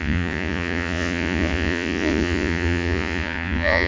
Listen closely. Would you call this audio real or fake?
fake